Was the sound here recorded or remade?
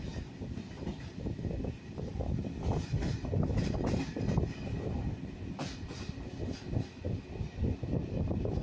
recorded